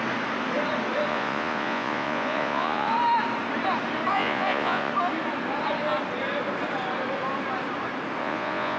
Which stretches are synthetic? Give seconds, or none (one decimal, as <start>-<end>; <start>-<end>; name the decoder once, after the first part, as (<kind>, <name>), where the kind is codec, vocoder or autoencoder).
1.1-2.9 (vocoder, Vocos); 4.1-4.9; 8.2-8.8